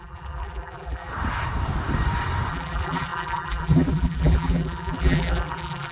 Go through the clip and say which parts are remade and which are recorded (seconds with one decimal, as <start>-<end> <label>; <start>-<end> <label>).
0.0-1.1 remade; 1.1-2.5 recorded; 2.5-5.9 remade